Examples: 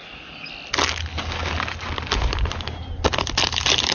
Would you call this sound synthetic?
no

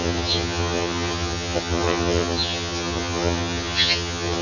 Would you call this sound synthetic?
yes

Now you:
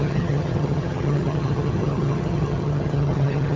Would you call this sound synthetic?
yes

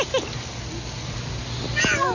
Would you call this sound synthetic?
no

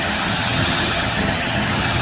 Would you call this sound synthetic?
yes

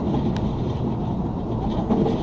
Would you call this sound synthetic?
no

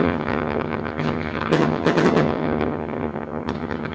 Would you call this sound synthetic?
yes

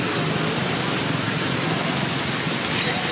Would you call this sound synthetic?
no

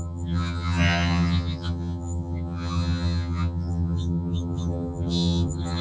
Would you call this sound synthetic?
yes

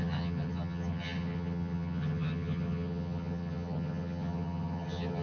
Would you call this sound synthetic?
yes